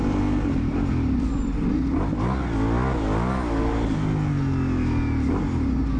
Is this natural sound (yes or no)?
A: yes